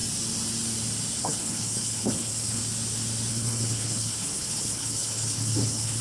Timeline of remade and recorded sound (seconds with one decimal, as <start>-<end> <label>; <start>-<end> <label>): 0.0-1.2 recorded; 1.2-2.6 remade; 2.6-3.3 recorded; 3.3-6.0 remade